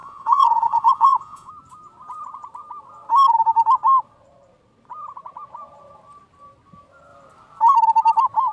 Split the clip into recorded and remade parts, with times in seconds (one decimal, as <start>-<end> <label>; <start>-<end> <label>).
0.0-1.5 remade; 1.5-8.5 recorded